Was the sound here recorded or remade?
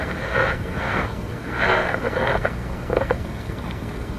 remade